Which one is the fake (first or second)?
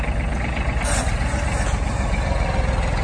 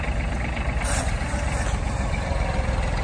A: second